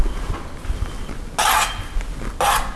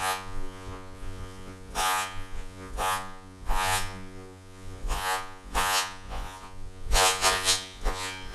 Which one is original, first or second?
first